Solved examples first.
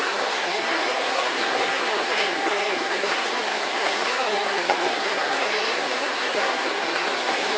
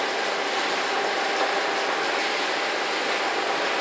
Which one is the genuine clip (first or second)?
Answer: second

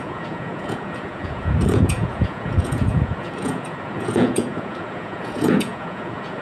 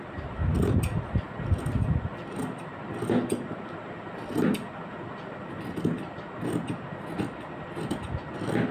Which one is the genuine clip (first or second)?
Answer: second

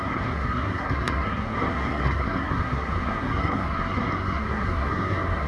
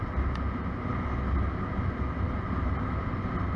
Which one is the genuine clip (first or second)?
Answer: second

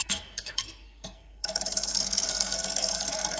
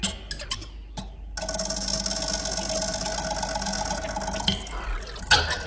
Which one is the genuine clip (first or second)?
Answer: second